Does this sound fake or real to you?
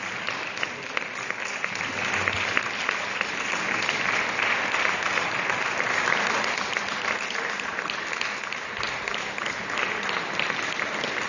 real